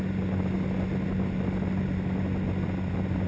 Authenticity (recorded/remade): recorded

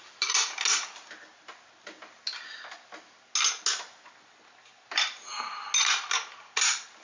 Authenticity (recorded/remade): recorded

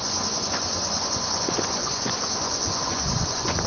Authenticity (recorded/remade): remade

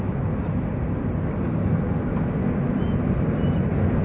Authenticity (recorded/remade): recorded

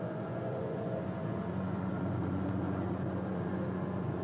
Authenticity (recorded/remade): remade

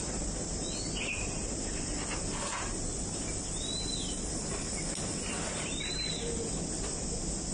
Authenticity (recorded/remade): recorded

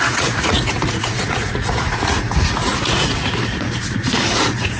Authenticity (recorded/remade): remade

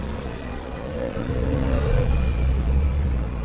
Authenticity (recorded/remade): remade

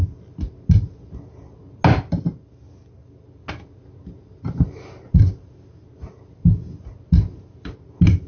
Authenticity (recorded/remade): recorded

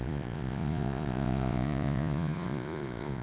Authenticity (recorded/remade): remade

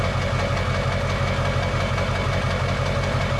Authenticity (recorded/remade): recorded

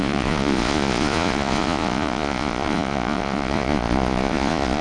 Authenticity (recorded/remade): remade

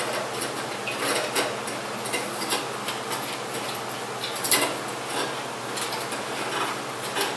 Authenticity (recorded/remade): recorded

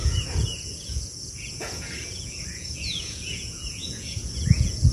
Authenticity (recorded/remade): remade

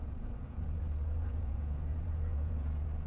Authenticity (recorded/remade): remade